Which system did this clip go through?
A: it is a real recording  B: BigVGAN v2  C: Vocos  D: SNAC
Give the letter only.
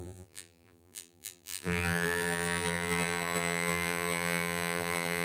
B